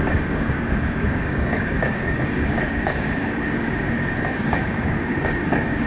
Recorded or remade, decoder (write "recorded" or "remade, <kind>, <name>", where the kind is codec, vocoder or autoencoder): remade, codec, DAC